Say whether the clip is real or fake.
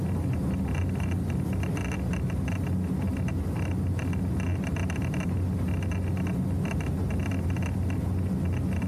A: real